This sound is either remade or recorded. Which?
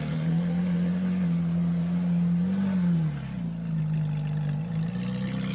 recorded